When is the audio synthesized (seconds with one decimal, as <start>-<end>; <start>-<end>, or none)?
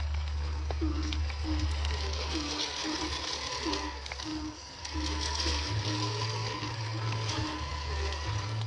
0.0-2.8; 3.7-8.7